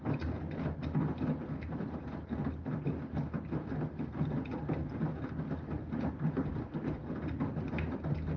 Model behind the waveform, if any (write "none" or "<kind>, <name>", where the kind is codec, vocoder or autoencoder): none